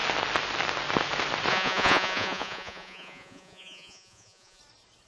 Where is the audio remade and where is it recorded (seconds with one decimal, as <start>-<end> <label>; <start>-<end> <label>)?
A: 0.0-1.5 recorded; 1.5-4.6 remade; 4.6-5.1 recorded